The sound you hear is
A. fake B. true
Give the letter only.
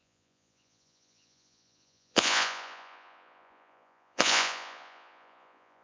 A